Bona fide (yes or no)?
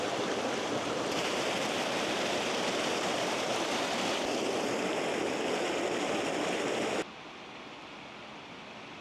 yes